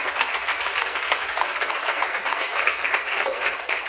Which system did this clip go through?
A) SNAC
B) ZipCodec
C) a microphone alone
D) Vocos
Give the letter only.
A